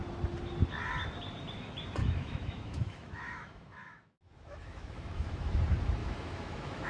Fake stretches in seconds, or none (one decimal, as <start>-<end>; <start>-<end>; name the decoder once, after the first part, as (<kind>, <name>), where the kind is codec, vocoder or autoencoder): 2.0-5.5 (autoencoder, DAC-VAE); 6.0-6.9